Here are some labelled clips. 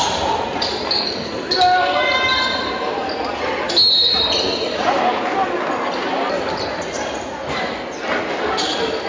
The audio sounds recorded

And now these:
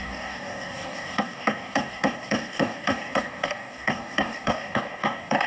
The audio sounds remade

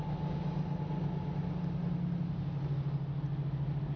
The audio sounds recorded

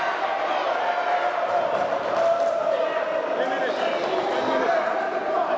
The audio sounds recorded